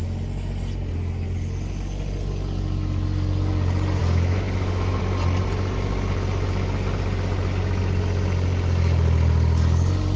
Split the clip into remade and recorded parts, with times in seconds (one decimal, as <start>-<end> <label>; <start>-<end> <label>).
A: 0.0-4.0 recorded; 4.0-5.0 remade; 5.0-10.2 recorded